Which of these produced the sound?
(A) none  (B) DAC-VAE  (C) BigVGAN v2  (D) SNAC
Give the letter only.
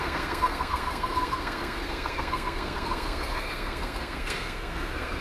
D